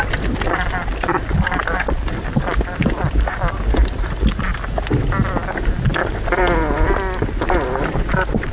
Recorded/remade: recorded